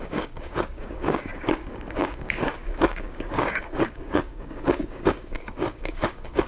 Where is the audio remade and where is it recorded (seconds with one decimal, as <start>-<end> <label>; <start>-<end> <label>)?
0.0-6.5 remade

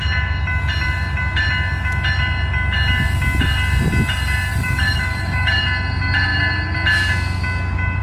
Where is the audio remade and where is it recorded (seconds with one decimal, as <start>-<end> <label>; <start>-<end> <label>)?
0.0-4.5 recorded; 4.5-5.6 remade; 5.6-8.0 recorded

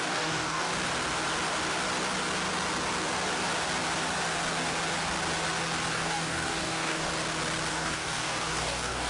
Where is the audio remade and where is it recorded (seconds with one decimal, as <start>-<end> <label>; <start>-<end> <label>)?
0.0-0.7 remade; 0.7-5.9 recorded; 5.9-7.1 remade; 7.1-7.7 recorded; 7.7-9.1 remade

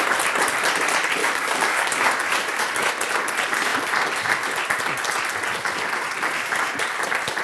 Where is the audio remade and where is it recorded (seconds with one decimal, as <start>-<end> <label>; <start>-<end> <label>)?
0.0-1.2 recorded; 1.2-2.9 remade; 2.9-7.4 recorded

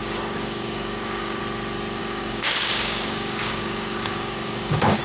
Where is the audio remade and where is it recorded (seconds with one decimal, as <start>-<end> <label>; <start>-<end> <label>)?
0.0-1.4 remade; 1.4-2.0 recorded; 2.0-5.0 remade

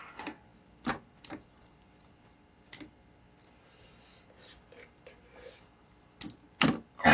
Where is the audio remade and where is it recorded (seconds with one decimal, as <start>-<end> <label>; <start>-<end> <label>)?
0.0-7.1 recorded